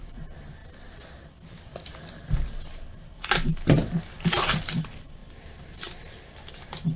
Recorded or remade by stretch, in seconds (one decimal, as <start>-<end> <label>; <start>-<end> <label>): 0.0-7.0 recorded